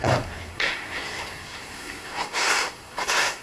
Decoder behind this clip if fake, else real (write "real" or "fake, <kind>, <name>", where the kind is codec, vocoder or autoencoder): fake, codec, SNAC